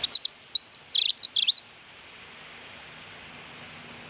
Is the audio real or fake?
real